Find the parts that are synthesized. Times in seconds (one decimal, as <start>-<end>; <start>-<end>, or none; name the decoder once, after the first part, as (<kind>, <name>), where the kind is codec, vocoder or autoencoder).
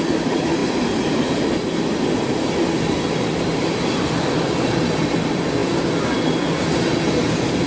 none